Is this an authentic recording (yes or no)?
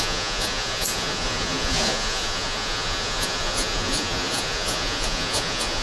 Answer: no